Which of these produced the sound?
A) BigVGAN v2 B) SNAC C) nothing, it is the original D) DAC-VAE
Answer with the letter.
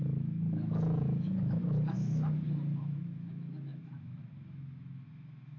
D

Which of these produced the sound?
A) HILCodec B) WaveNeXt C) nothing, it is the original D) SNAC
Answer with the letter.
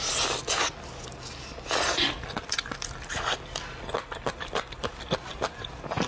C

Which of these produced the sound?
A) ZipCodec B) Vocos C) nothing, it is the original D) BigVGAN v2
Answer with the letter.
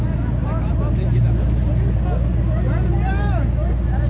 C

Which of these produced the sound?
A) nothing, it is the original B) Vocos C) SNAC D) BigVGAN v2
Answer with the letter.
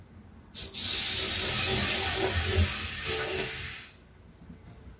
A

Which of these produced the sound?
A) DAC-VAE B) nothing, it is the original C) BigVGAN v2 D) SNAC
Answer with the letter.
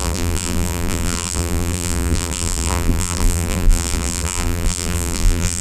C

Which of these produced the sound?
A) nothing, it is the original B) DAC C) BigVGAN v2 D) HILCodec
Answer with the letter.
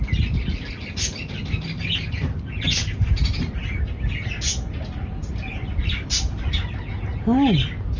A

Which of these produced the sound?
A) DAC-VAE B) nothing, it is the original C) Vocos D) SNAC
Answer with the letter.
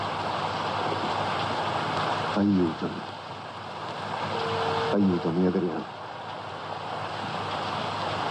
B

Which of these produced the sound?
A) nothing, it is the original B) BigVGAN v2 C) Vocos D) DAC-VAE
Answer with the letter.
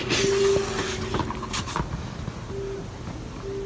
A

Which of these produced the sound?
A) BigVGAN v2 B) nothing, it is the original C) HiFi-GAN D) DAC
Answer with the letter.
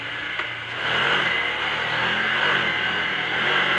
B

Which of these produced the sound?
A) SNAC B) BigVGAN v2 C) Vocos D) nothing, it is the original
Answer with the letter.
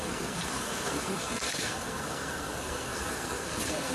A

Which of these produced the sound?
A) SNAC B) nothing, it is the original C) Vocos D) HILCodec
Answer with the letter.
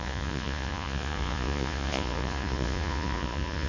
C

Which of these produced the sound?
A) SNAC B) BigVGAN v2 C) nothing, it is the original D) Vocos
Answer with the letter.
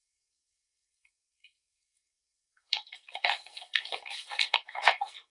A